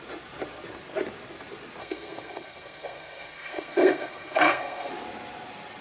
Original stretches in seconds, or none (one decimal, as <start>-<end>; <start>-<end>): 0.0-1.8; 4.9-5.8